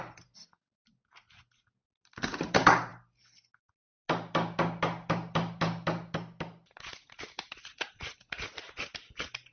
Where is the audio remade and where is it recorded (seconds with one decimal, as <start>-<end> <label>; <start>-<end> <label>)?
0.0-9.5 recorded